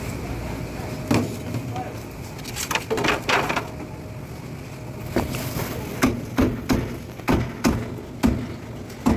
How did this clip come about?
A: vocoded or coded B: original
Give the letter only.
B